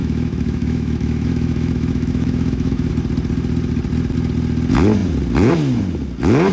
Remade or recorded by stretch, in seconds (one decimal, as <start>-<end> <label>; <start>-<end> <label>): 0.0-2.9 remade; 2.9-6.5 recorded